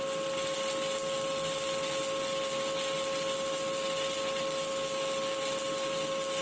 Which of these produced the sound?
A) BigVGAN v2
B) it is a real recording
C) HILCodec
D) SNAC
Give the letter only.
B